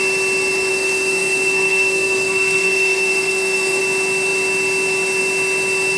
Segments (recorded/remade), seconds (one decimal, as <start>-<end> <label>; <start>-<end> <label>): 0.0-0.7 recorded; 0.7-3.8 remade; 3.8-6.0 recorded